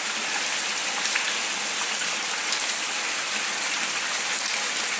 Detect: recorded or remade remade